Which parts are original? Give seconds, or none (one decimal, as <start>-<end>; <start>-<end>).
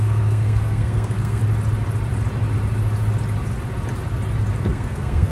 1.4-4.6